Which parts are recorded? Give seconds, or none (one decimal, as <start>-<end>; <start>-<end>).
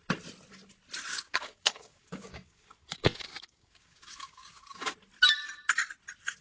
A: 0.0-1.1; 4.9-6.4